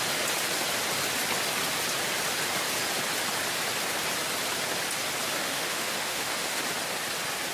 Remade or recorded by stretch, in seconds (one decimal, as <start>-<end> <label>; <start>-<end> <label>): 0.0-5.4 recorded; 5.4-6.6 remade; 6.6-7.5 recorded